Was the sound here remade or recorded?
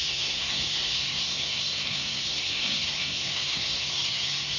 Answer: remade